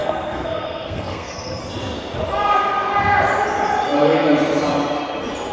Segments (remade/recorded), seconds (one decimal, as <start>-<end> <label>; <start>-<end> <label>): 0.0-1.6 remade; 1.6-5.5 recorded